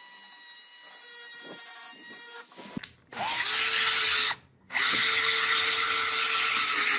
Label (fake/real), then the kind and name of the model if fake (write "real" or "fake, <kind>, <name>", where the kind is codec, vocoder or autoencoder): real